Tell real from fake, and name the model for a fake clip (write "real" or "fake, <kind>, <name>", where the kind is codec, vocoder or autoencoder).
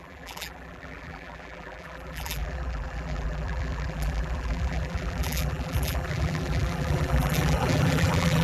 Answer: fake, vocoder, BigVGAN v2